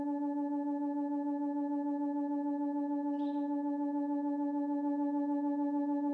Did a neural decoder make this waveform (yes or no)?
no